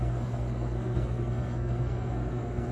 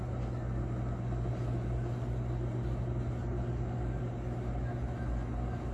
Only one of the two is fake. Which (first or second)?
first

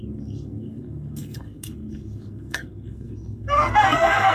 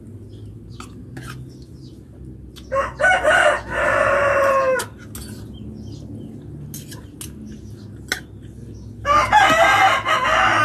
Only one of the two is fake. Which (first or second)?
first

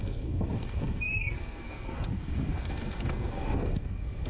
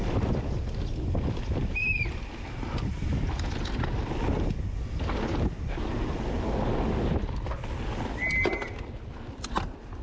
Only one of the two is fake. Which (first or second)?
first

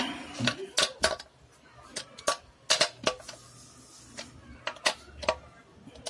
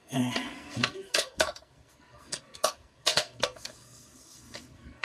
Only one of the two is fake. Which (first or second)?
second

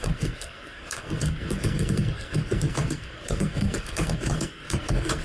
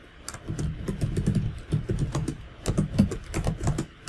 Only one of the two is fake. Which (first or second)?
first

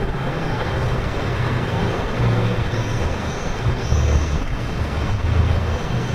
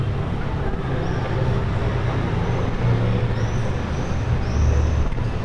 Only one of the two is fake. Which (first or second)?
first